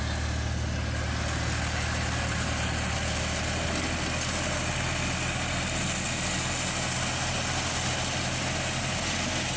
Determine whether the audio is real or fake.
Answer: real